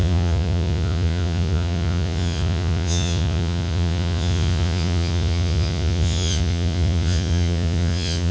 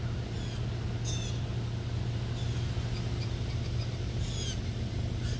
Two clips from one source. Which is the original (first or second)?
second